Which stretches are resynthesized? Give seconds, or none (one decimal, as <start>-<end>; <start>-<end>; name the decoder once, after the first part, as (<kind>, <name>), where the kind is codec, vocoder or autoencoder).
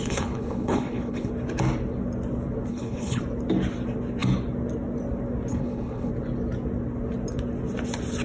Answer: 0.0-1.3 (codec, HILCodec); 2.7-3.2; 5.5-6.1